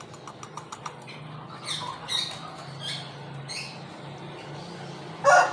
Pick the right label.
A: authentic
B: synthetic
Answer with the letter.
A